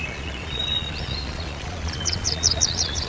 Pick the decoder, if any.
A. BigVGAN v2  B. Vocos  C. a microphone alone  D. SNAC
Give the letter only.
B